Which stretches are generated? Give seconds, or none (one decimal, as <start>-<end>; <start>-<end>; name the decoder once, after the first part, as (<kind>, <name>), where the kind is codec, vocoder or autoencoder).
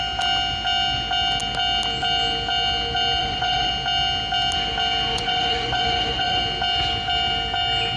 3.2-3.7 (vocoder, Vocos); 5.1-6.4